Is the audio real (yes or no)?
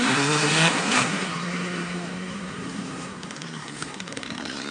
no